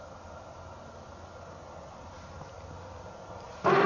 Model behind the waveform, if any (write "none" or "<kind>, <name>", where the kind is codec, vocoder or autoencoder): none